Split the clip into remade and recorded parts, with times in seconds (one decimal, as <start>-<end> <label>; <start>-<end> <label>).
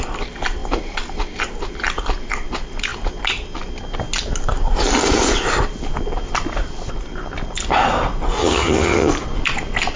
0.0-8.4 recorded; 8.4-9.1 remade; 9.1-10.0 recorded